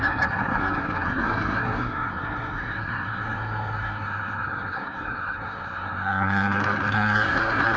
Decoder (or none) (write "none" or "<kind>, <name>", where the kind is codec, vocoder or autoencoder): codec, SNAC